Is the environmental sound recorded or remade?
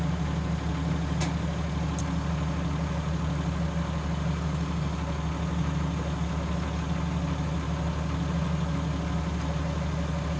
recorded